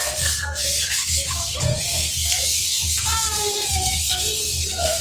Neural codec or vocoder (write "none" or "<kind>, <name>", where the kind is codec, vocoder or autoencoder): codec, SNAC